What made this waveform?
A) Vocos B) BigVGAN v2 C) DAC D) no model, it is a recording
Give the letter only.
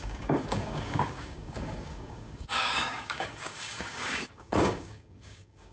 C